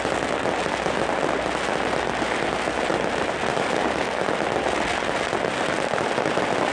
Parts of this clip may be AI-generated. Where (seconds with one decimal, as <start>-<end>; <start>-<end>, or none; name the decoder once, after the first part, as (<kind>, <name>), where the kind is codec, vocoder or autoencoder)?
none